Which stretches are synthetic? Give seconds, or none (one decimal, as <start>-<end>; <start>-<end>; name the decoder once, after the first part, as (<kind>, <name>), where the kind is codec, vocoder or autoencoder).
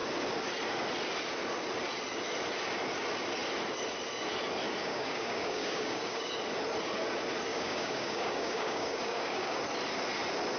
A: 4.8-6.3 (codec, DAC); 7.5-9.6